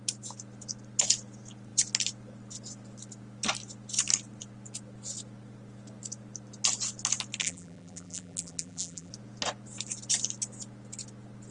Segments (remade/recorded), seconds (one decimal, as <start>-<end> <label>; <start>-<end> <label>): 0.0-7.4 recorded; 7.4-9.1 remade; 9.1-11.5 recorded